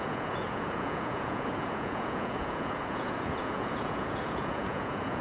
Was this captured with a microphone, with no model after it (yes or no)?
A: no